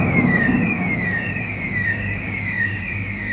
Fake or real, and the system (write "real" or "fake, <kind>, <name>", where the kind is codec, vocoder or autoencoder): fake, codec, DAC